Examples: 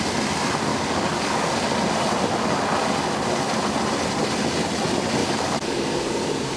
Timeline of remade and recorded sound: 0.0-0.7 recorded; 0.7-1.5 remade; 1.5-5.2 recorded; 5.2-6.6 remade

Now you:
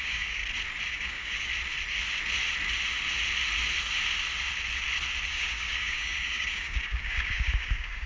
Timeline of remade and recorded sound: 0.0-0.4 remade; 0.4-0.9 recorded; 0.9-1.5 remade; 1.5-5.3 recorded; 5.3-8.1 remade

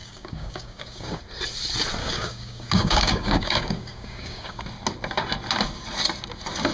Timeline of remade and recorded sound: 0.0-1.2 remade; 1.2-2.0 recorded; 2.0-4.6 remade; 4.6-6.7 recorded